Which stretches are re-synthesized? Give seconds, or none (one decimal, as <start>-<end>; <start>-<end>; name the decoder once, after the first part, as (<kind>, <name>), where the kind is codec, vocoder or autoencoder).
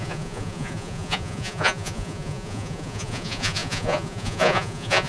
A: 0.0-5.1 (vocoder, Vocos)